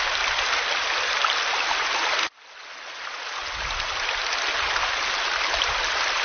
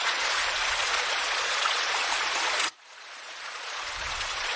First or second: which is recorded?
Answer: first